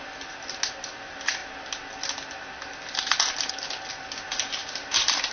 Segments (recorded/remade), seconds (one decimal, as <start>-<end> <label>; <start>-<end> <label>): 0.0-5.3 recorded